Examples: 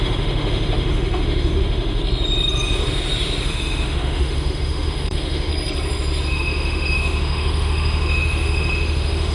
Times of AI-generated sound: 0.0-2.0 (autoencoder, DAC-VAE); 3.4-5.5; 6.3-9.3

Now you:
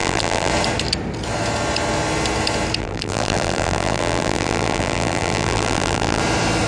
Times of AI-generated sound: 0.0-0.5 (vocoder, BigVGAN v2); 2.8-6.2

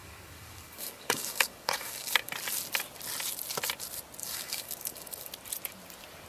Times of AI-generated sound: 0.0-2.3 (codec, DAC); 4.2-5.3

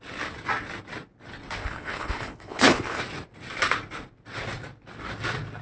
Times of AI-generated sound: 1.6-3.0 (codec, HILCodec)

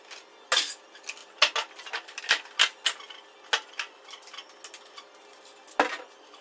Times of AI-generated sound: none

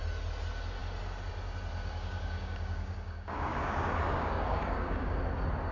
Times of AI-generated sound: 1.8-5.2 (codec, DAC)

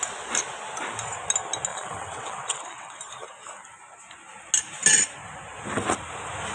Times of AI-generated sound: 1.7-3.0 (vocoder, WaveNeXt)

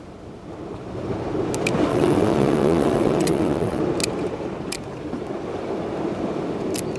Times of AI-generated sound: 1.9-3.8 (vocoder, WaveNeXt)